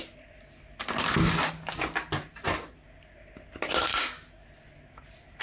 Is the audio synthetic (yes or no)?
no